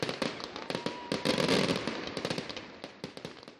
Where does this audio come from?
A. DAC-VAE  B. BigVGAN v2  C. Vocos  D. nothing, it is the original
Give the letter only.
D